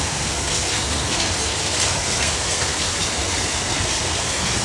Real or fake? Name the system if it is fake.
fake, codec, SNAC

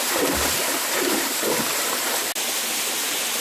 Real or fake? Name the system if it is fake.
real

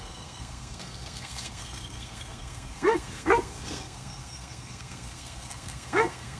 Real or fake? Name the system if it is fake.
fake, codec, SNAC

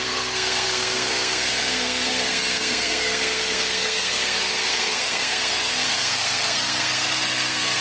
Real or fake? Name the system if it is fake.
fake, codec, SNAC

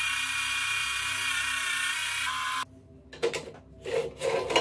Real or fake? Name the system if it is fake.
real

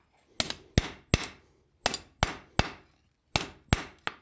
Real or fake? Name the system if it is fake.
real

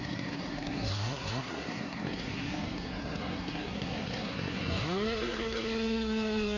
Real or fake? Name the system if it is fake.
fake, codec, SNAC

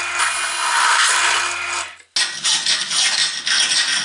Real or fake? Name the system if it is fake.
real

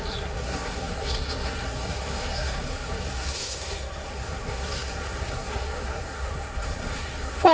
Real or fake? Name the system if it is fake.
fake, codec, SNAC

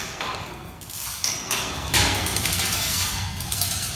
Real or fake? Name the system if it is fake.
fake, codec, SNAC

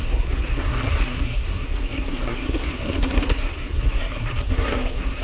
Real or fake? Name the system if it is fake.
fake, codec, SNAC